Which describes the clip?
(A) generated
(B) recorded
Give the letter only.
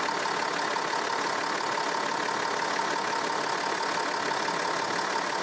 B